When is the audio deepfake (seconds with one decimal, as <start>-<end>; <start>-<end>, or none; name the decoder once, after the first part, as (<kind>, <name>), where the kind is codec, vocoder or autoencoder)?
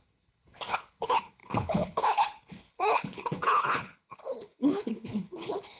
0.0-5.8 (codec, HILCodec)